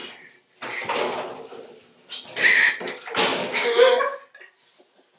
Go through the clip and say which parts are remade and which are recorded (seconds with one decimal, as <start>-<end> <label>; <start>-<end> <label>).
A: 0.0-3.3 recorded; 3.3-4.0 remade; 4.0-5.2 recorded